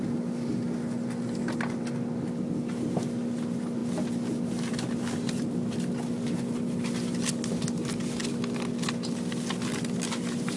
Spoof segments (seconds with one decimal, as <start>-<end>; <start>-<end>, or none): none

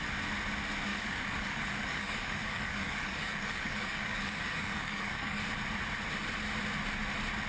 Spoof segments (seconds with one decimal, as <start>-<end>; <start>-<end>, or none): 0.9-5.4